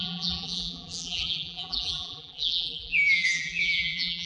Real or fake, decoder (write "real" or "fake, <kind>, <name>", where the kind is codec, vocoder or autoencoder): fake, vocoder, BigVGAN v2